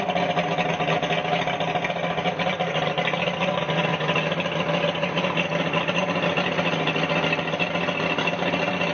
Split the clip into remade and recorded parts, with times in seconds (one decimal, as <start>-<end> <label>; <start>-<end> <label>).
0.0-8.9 recorded